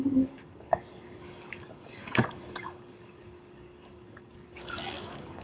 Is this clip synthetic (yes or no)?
yes